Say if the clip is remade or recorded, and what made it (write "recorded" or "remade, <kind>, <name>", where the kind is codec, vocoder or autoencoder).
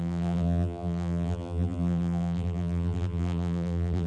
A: remade, vocoder, BigVGAN v2